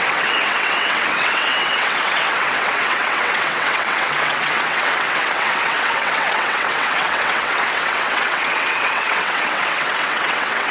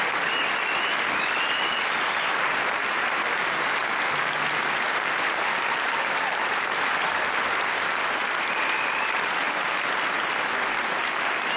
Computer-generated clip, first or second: first